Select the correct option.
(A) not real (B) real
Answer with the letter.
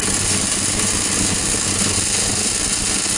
B